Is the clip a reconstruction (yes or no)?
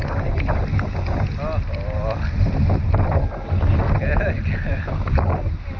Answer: no